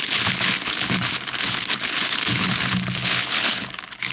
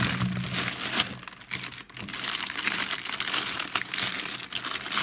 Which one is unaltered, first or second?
second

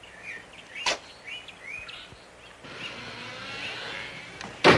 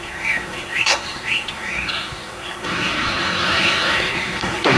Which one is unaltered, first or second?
first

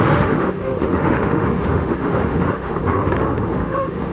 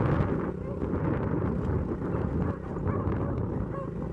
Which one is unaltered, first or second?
second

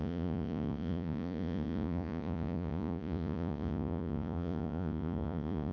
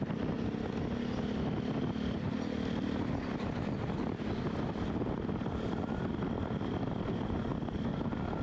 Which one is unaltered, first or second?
second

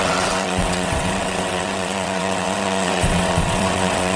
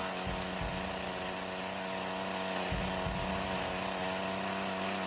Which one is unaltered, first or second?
second